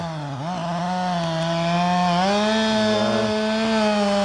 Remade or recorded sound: recorded